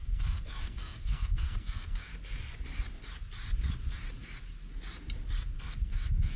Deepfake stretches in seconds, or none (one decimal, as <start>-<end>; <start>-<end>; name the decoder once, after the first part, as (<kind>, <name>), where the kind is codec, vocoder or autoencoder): 0.0-2.1 (codec, SNAC); 5.6-6.4